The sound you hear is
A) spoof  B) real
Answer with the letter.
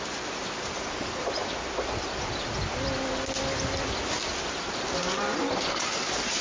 B